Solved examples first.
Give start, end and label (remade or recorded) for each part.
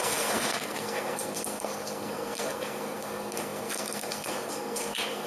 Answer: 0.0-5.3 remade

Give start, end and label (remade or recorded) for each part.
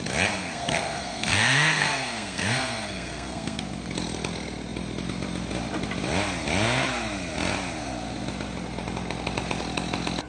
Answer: 0.0-0.4 recorded; 0.4-3.6 remade; 3.6-10.3 recorded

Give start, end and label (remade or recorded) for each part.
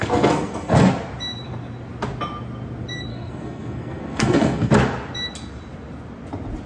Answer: 0.0-0.9 remade; 0.9-3.1 recorded; 3.1-4.7 remade; 4.7-6.7 recorded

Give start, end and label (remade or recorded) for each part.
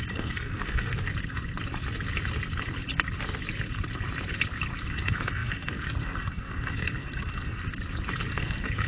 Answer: 0.0-1.1 remade; 1.1-4.9 recorded; 4.9-7.7 remade; 7.7-8.3 recorded; 8.3-8.9 remade